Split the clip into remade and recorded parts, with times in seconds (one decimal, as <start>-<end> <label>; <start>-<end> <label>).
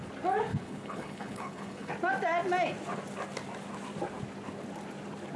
0.0-0.5 recorded; 0.5-1.9 remade; 1.9-5.4 recorded